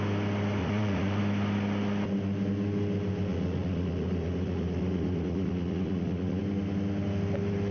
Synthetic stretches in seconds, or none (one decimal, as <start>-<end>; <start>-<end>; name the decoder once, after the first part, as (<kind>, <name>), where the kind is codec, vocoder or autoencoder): 0.6-1.2 (vocoder, Vocos); 3.3-6.4